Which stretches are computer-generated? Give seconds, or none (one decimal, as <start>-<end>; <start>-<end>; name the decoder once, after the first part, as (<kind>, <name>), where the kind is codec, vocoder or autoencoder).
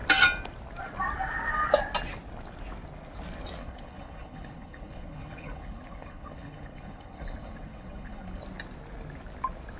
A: 3.6-8.4 (codec, HILCodec)